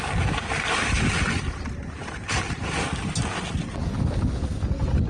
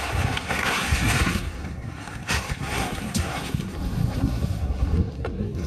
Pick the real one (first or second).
first